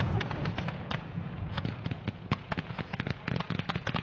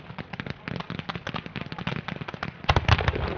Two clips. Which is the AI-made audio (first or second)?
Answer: first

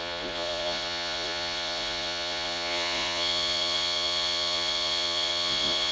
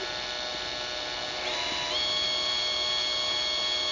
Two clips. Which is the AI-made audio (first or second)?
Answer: first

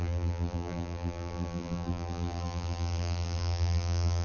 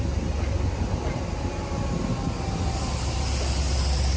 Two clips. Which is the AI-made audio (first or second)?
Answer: first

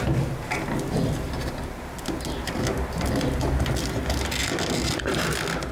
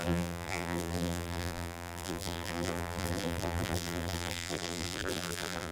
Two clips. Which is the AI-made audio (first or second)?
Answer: second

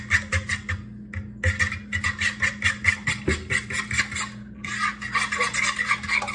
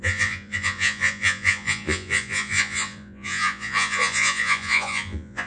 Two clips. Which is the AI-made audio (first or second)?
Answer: second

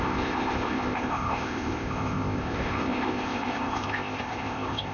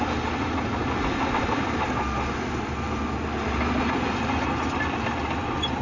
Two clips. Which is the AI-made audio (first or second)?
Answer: first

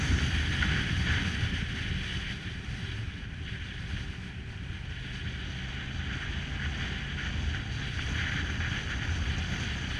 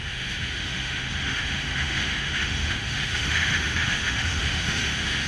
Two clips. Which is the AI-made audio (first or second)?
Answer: second